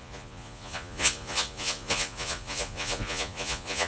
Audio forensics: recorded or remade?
remade